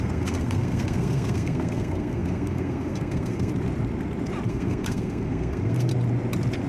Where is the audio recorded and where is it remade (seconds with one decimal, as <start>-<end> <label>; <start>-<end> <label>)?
0.0-3.5 remade; 3.5-4.5 recorded; 4.5-5.9 remade; 5.9-6.7 recorded

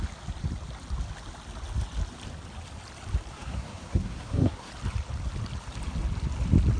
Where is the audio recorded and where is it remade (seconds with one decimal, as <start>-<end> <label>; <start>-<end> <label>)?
0.0-3.3 recorded; 3.3-4.7 remade; 4.7-6.8 recorded

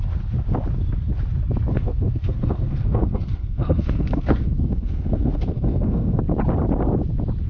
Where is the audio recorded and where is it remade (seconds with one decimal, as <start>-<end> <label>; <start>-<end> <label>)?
0.0-1.7 recorded; 1.7-6.2 remade; 6.2-7.5 recorded

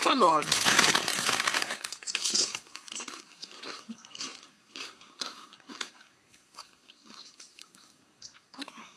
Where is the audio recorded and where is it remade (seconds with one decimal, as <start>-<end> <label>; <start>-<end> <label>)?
0.0-9.0 remade